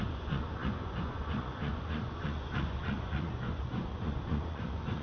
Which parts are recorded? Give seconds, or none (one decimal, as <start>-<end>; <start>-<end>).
none